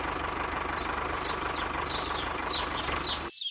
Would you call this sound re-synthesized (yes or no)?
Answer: no